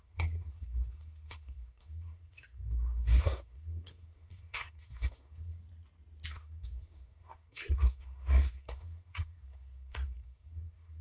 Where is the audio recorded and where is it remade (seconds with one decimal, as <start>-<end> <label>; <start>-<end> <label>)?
0.0-5.6 remade; 5.6-6.3 recorded; 6.3-11.0 remade